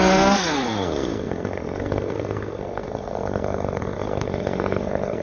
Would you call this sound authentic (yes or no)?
no